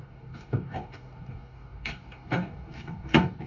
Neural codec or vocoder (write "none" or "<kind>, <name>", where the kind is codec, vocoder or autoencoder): codec, DAC